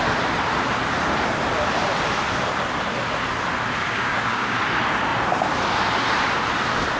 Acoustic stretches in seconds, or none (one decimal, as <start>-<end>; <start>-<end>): 0.0-3.8; 4.6-7.0